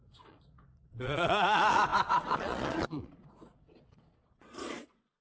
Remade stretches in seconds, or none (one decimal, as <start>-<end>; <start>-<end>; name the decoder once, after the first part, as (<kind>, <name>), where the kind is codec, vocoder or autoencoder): 0.0-5.2 (vocoder, Vocos)